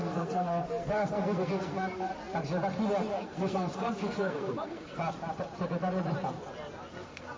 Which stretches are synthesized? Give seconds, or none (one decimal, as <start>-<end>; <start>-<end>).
0.0-2.1; 3.1-5.0; 6.9-7.4

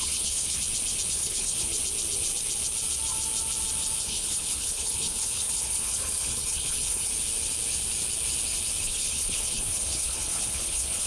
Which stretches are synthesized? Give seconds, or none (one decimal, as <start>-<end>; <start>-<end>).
0.0-0.6; 1.1-1.7; 4.0-7.1; 8.8-11.1

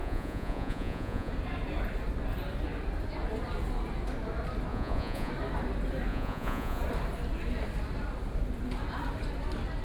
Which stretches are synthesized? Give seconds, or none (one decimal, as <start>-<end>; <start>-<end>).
0.0-1.3; 4.7-5.3; 6.1-6.8

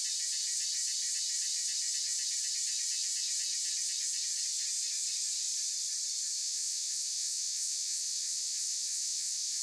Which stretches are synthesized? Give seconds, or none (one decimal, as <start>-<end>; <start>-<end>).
6.4-9.6

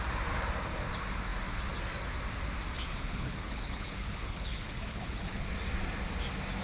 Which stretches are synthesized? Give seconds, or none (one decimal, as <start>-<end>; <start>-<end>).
3.0-5.4

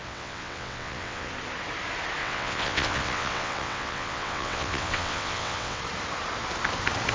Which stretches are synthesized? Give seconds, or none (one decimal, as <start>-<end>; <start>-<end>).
0.0-1.3; 2.2-5.8

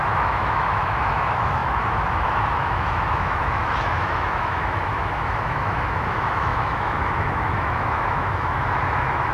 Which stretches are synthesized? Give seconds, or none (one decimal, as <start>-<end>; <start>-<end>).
0.0-9.3

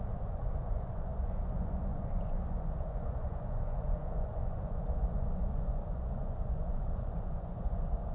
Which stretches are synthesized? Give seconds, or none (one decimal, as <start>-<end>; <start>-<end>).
0.0-8.1